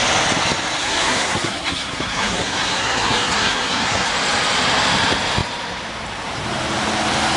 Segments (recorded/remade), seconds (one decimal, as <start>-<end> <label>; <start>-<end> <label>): 0.0-0.8 recorded; 0.8-4.1 remade; 4.1-7.4 recorded